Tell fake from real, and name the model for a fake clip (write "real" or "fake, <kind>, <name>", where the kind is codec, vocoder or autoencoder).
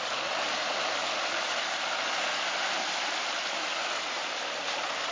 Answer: fake, vocoder, BigVGAN v2